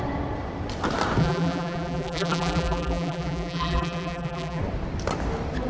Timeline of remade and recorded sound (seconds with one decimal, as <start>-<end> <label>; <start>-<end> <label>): 0.0-1.2 recorded; 1.2-4.6 remade; 4.6-5.7 recorded